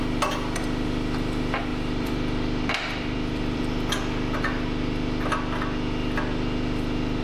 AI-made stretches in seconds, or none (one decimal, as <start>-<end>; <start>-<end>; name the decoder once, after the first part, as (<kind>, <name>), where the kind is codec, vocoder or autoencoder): 1.7-3.6 (vocoder, BigVGAN v2)